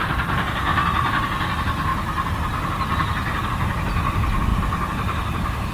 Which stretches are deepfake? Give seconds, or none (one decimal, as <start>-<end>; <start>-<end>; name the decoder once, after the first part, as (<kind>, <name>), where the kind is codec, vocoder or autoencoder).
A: 0.0-0.7 (vocoder, BigVGAN v2); 1.4-1.9; 3.5-5.7